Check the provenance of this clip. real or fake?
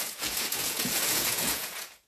fake